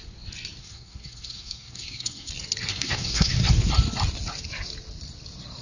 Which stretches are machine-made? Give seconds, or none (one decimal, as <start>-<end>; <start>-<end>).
0.6-2.3; 2.7-3.4